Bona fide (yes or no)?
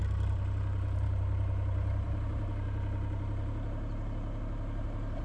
no